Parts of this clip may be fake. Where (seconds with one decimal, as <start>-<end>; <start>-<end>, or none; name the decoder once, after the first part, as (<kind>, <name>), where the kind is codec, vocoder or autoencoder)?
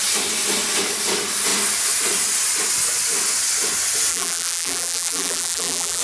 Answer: 4.1-6.0 (vocoder, BigVGAN v2)